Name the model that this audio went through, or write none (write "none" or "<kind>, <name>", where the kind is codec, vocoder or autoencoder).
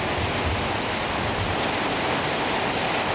none